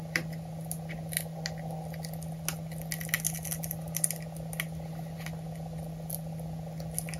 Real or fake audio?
real